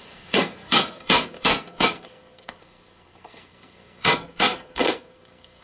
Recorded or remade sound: remade